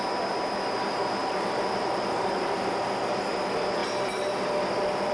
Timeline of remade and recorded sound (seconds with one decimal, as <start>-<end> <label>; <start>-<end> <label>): 0.0-1.2 recorded; 1.2-2.7 remade; 2.7-5.1 recorded

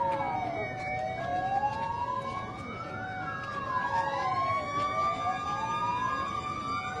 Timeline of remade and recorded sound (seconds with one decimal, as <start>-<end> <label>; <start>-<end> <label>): 0.0-4.5 recorded; 4.5-6.1 remade; 6.1-7.0 recorded

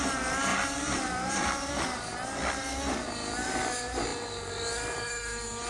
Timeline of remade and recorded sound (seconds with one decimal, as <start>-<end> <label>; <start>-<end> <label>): 0.0-0.5 recorded; 0.5-1.7 remade; 1.7-5.7 recorded

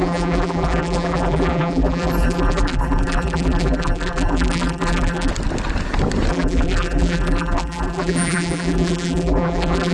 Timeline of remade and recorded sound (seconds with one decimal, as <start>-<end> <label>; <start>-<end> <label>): 0.0-5.3 remade; 5.3-6.3 recorded; 6.3-9.9 remade

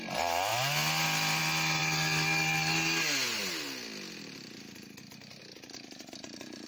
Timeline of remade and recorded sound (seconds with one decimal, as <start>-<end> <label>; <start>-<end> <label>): 0.0-6.7 recorded

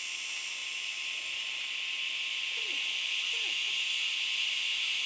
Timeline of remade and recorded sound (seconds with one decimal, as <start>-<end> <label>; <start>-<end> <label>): 0.0-0.6 recorded; 0.6-3.7 remade; 3.7-5.1 recorded

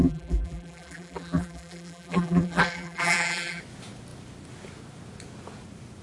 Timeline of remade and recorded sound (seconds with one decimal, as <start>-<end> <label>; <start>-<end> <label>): 0.0-3.6 remade; 3.6-6.0 recorded